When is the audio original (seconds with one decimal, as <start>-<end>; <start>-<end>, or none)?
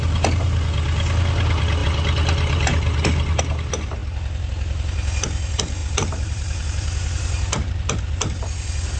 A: 0.0-1.8; 3.4-5.8; 8.0-9.0